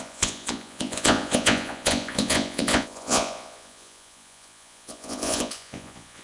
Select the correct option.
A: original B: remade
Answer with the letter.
B